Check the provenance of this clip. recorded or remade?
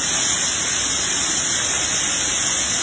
recorded